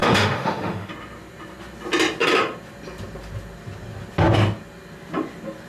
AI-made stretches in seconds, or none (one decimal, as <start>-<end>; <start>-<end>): 0.0-0.9